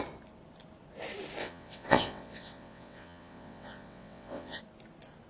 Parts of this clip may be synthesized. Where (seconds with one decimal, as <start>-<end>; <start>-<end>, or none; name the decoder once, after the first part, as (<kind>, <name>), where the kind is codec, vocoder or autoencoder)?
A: 1.4-4.6 (vocoder, WaveNeXt)